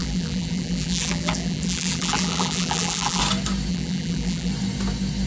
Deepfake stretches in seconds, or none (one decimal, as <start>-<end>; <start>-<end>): 0.0-3.2; 3.7-4.5